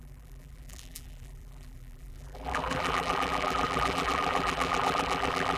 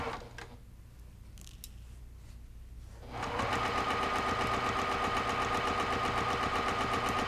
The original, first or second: second